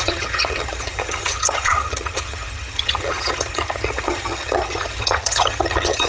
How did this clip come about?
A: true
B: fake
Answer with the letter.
B